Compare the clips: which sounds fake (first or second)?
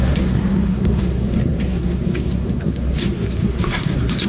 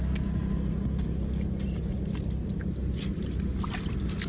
first